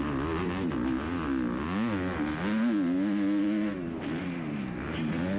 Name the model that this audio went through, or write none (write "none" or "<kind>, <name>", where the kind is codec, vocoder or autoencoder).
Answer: none